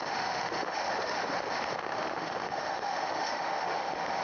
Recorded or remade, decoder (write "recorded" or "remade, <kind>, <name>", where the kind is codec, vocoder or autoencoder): remade, autoencoder, DAC-VAE